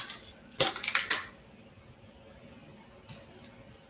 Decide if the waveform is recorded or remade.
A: recorded